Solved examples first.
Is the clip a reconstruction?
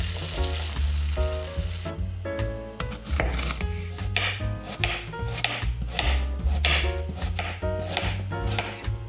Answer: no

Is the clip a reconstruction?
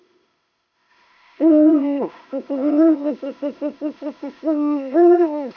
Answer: yes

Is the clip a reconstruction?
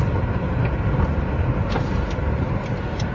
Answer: no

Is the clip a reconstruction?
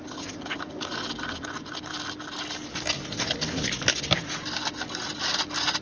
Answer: no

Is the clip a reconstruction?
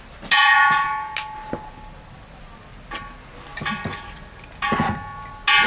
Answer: no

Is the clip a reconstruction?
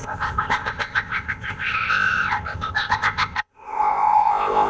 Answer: yes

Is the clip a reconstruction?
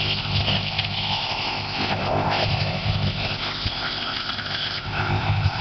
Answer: yes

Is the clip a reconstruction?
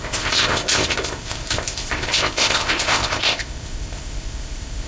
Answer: yes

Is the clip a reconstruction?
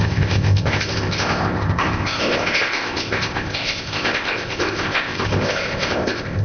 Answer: yes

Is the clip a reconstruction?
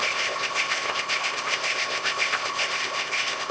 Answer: yes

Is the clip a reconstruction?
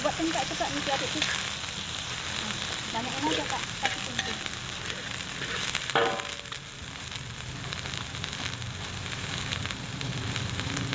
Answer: no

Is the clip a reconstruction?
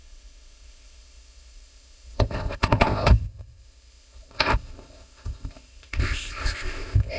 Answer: yes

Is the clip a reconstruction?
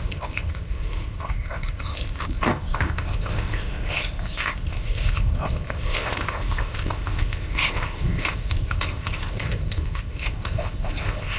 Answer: yes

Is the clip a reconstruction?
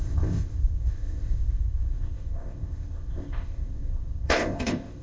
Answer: yes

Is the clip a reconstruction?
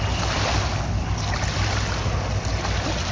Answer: no